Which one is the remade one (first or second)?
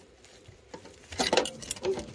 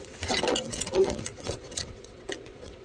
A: second